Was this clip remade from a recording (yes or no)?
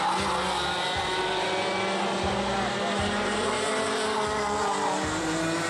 no